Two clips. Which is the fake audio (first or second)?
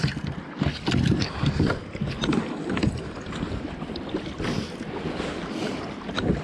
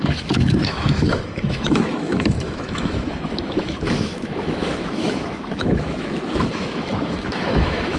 second